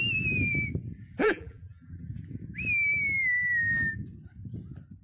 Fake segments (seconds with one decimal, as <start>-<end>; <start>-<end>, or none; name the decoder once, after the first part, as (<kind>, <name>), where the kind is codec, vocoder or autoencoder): 1.2-2.1 (vocoder, BigVGAN v2)